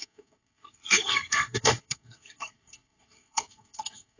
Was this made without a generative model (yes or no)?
no